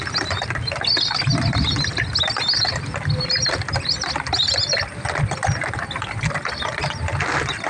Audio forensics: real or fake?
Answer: real